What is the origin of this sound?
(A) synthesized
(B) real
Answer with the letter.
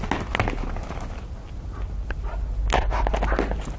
B